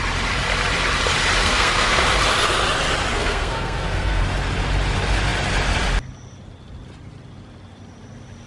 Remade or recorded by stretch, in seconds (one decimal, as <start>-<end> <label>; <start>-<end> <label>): 0.0-1.4 recorded; 1.4-2.0 remade; 2.0-3.1 recorded; 3.1-4.2 remade; 4.2-8.5 recorded